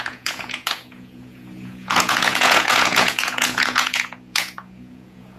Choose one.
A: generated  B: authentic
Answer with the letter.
A